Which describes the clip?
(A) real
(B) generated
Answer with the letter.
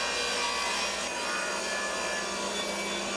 A